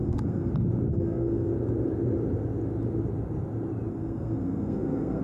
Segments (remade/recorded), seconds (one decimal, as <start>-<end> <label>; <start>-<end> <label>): 0.0-0.5 remade; 0.5-0.9 recorded; 0.9-1.5 remade; 1.5-3.9 recorded; 3.9-5.2 remade